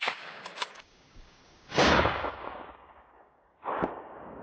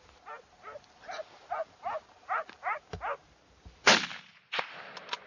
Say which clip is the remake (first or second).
first